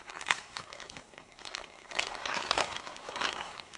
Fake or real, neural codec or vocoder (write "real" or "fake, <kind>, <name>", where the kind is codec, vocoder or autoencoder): fake, codec, SNAC